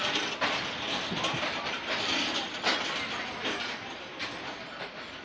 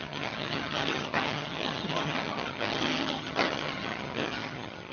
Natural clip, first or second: first